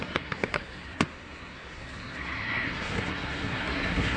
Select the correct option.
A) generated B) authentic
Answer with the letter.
A